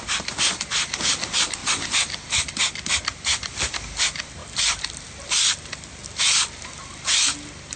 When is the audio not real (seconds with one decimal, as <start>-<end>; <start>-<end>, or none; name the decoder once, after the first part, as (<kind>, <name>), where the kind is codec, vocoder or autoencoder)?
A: 1.6-2.5 (vocoder, BigVGAN v2); 4.4-7.2